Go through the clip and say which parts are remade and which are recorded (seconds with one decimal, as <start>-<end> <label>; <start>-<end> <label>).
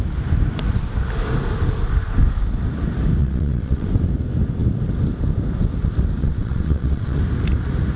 0.0-3.2 recorded; 3.2-3.9 remade; 3.9-6.2 recorded; 6.2-7.2 remade; 7.2-8.0 recorded